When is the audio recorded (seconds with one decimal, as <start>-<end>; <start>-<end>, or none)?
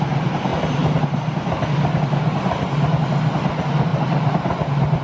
0.0-3.9